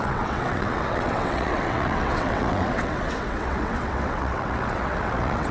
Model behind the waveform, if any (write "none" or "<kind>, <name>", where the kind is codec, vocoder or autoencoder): vocoder, WaveNeXt